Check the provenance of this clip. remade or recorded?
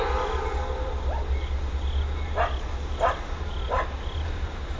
recorded